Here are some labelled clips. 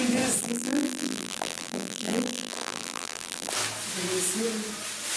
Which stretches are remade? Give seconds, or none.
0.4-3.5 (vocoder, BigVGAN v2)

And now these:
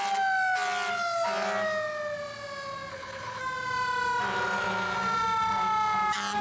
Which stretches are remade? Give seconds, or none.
2.9-3.4 (codec, HILCodec)

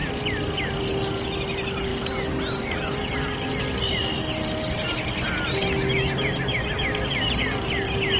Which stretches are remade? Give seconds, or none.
none

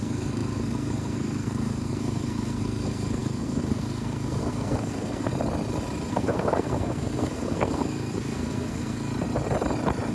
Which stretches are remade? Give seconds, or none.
0.0-5.3 (codec, SNAC); 6.1-9.1

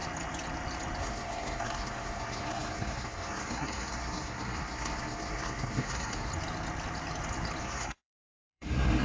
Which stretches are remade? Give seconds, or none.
1.0-6.3 (codec, SNAC); 7.6-9.0

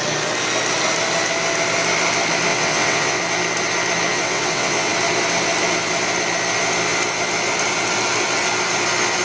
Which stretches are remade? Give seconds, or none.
2.5-3.2 (vocoder, WaveNeXt); 4.1-4.9

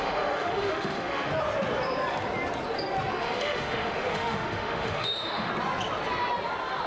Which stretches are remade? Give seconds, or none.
0.0-1.3 (autoencoder, DAC-VAE); 3.1-5.5